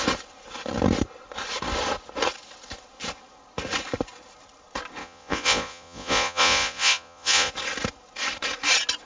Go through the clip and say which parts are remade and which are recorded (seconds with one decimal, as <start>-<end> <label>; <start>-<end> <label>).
0.0-5.0 recorded; 5.0-7.5 remade; 7.5-9.1 recorded